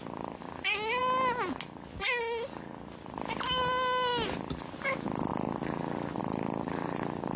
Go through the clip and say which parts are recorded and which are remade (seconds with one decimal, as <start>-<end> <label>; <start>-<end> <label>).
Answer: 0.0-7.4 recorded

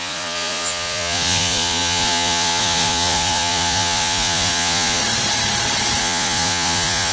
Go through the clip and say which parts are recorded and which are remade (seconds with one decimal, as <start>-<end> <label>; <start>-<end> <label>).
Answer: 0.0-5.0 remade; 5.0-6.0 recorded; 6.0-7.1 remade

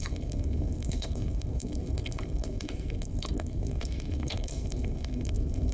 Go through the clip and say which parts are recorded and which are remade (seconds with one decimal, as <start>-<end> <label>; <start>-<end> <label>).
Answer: 0.0-5.7 remade